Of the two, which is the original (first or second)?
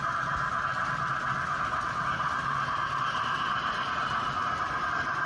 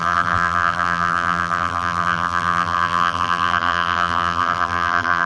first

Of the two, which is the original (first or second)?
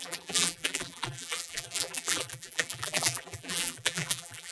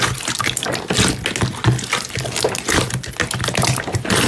second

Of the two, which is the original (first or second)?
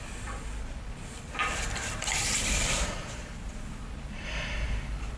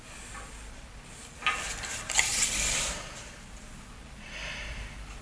second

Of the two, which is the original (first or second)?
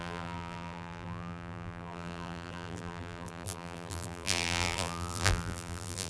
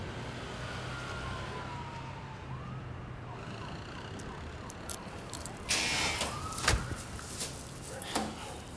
second